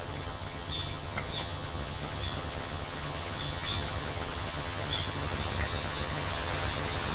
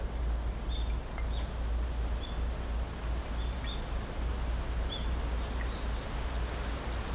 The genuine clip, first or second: second